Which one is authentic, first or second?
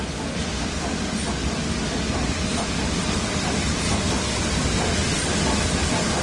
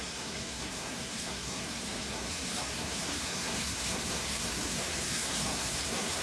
first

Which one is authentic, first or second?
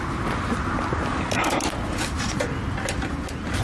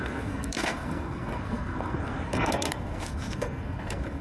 first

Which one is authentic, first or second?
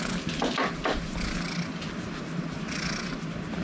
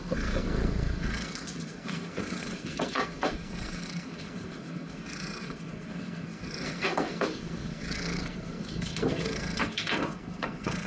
first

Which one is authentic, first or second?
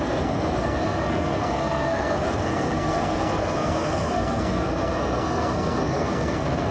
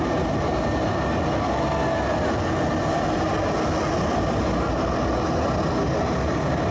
second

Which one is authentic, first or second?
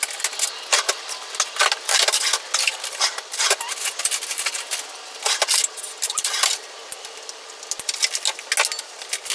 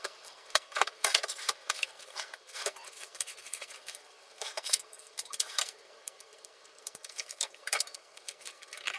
first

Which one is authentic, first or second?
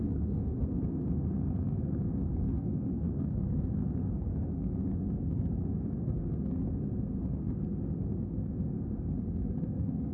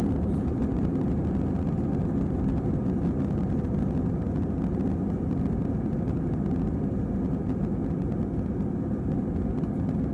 second